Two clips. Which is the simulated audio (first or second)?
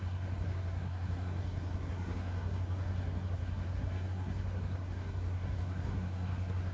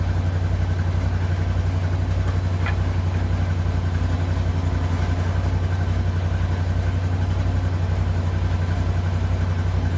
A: first